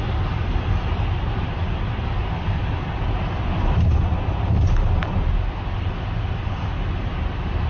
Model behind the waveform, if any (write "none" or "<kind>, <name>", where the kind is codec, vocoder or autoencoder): none